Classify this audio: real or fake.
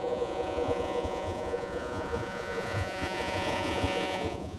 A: fake